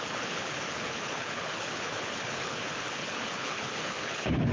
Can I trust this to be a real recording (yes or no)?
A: no